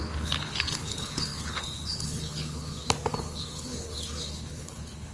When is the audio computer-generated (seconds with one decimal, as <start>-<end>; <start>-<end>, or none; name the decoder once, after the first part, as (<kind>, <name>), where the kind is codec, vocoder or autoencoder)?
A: 0.0-2.7 (codec, HILCodec); 3.2-5.1